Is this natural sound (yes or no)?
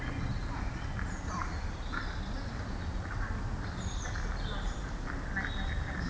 yes